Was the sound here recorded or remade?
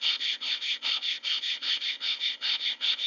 remade